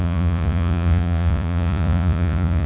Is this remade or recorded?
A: remade